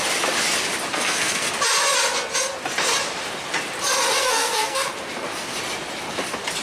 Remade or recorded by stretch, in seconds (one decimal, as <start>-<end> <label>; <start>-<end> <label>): 0.0-0.9 recorded; 0.9-1.5 remade; 1.5-4.2 recorded; 4.2-4.9 remade; 4.9-6.6 recorded